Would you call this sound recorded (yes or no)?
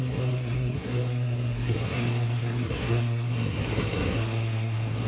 no